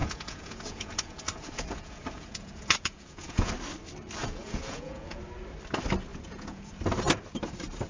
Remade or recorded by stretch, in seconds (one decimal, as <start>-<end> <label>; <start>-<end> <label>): 0.0-3.5 remade; 3.5-4.2 recorded; 4.2-5.2 remade; 5.2-6.1 recorded; 6.1-6.7 remade; 6.7-7.9 recorded